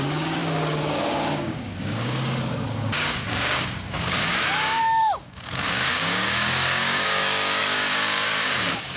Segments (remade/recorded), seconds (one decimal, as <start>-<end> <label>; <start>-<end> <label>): 0.0-9.0 remade